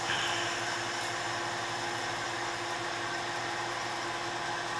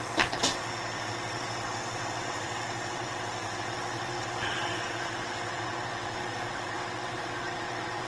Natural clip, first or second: first